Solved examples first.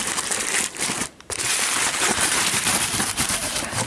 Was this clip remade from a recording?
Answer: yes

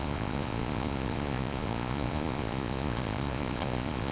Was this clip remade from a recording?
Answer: yes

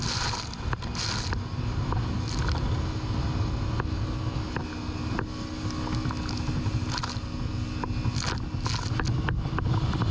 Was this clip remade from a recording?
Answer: no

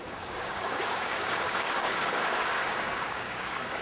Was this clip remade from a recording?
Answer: yes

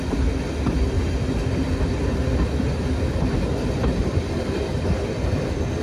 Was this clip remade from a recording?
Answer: no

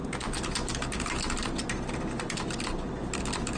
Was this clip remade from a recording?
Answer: no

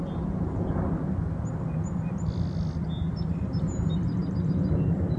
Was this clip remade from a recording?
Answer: no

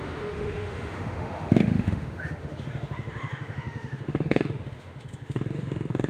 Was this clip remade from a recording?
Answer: yes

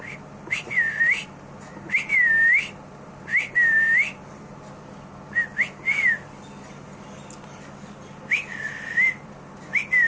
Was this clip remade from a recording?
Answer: no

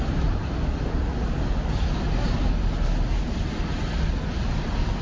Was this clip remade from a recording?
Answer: no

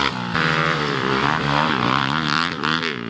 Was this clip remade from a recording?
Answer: yes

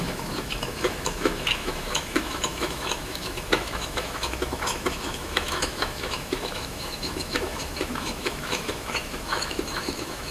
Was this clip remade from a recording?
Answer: yes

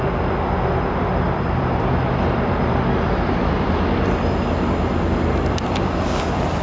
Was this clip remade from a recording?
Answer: yes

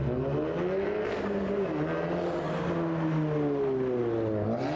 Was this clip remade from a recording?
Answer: no